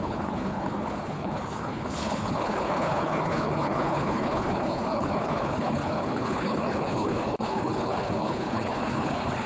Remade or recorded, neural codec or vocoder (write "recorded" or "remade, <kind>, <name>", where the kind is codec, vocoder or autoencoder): remade, codec, HILCodec